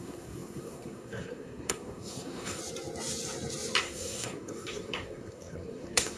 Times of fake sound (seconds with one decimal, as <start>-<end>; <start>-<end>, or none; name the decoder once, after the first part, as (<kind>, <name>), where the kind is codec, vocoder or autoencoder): 0.0-2.6 (codec, SNAC); 3.8-6.2